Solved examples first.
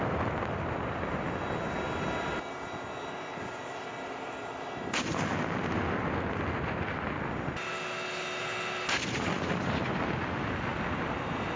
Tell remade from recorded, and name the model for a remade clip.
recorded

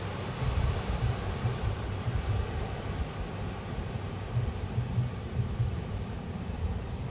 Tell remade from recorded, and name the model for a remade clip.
recorded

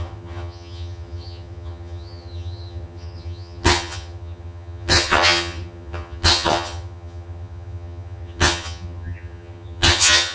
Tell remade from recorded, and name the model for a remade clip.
remade, vocoder, HiFi-GAN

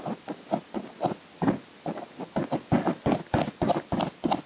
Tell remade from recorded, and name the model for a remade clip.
recorded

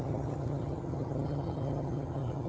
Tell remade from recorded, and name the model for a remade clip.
remade, vocoder, HiFi-GAN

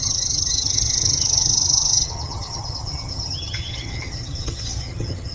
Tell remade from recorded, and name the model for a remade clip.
remade, vocoder, HiFi-GAN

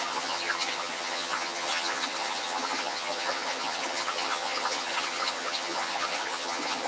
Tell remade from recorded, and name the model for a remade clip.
remade, vocoder, HiFi-GAN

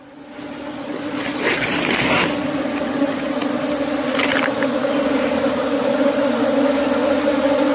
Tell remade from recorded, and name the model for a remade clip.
recorded